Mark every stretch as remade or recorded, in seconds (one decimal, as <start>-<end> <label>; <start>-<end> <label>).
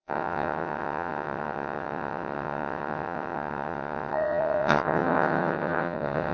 0.0-6.3 remade